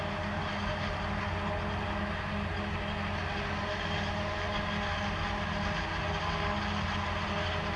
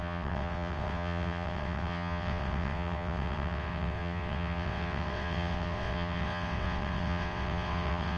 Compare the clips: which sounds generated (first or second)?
second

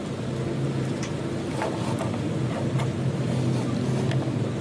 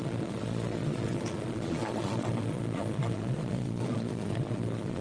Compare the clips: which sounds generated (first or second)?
second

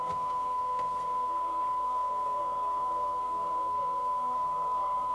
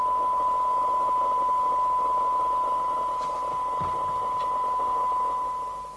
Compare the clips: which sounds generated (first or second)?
first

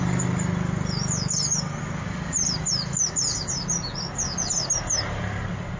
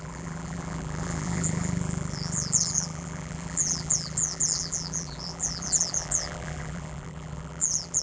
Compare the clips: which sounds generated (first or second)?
second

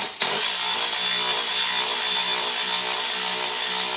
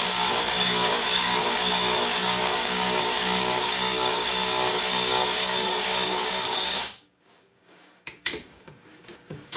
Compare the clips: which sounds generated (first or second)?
second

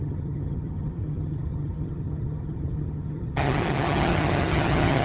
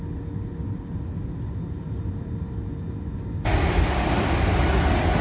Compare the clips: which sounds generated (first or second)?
first